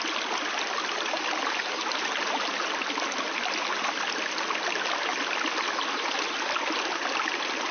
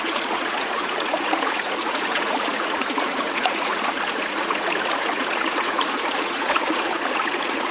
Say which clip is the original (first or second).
first